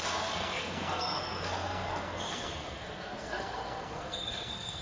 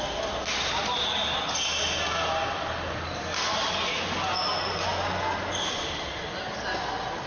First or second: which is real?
second